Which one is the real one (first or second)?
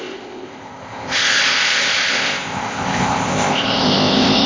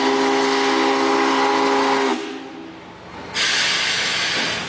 second